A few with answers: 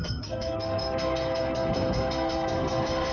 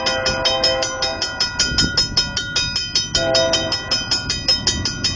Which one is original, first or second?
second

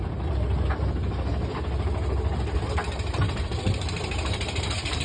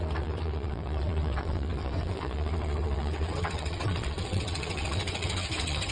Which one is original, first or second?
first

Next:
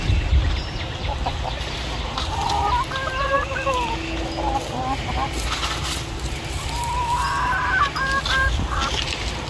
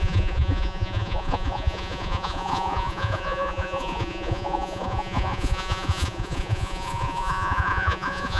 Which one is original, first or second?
first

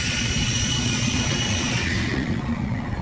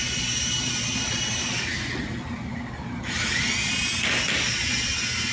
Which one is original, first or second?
second